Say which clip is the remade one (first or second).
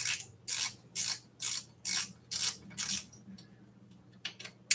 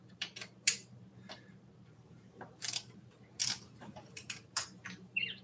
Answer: second